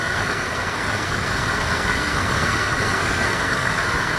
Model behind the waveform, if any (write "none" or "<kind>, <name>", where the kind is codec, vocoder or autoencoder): codec, SNAC